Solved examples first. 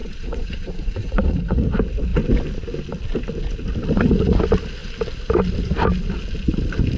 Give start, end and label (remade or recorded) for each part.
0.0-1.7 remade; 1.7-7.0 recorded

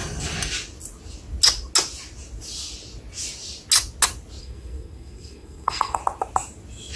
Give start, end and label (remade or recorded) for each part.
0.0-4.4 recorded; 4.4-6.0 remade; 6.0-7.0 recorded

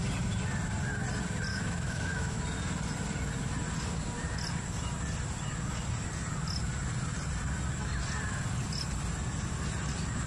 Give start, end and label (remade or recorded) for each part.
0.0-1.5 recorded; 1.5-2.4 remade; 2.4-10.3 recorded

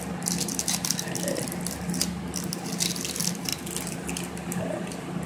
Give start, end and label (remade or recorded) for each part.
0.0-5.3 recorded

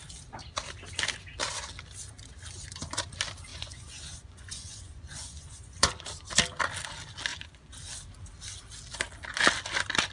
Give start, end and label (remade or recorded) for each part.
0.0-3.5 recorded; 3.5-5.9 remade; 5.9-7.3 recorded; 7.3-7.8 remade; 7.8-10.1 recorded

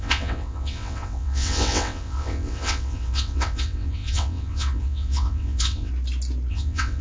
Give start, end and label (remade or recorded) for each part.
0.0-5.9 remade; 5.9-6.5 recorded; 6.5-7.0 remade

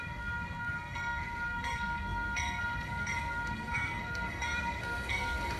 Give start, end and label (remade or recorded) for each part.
0.0-5.6 remade

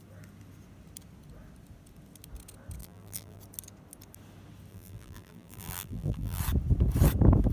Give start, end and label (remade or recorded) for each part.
0.0-2.8 recorded; 2.8-3.4 remade; 3.4-4.7 recorded; 4.7-6.4 remade; 6.4-7.5 recorded